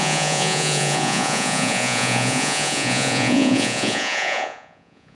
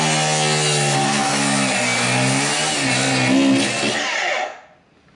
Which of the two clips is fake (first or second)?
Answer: first